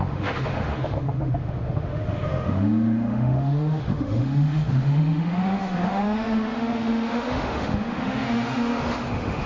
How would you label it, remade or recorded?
remade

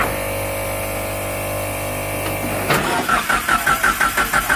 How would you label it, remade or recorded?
recorded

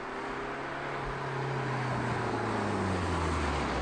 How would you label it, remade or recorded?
recorded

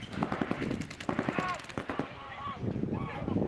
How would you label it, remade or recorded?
recorded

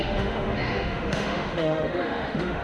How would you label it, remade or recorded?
remade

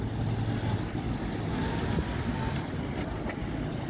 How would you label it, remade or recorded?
recorded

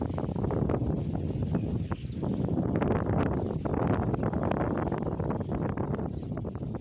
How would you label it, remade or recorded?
recorded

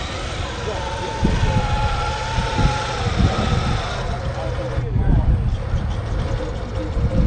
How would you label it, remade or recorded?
recorded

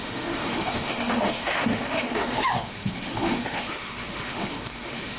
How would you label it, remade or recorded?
remade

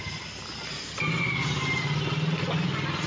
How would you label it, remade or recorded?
recorded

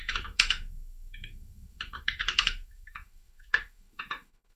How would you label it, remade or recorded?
remade